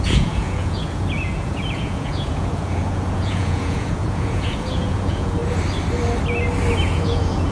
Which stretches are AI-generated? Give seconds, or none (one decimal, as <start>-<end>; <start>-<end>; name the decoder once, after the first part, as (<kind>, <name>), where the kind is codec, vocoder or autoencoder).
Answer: 0.0-5.4 (vocoder, Vocos); 6.8-7.5